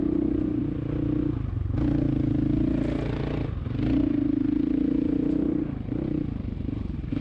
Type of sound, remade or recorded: recorded